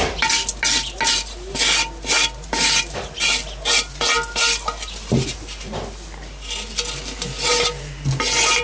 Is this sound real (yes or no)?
yes